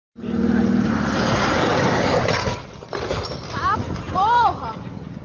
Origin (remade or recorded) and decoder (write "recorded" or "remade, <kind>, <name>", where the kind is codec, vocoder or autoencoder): recorded